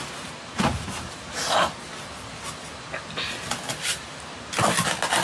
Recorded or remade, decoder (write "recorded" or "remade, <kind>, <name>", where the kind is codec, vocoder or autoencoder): recorded